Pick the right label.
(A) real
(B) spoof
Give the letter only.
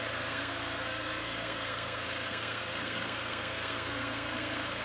B